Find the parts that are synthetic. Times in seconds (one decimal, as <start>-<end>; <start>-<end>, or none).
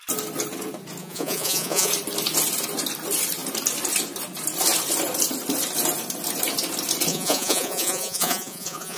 1.0-1.9; 7.1-9.0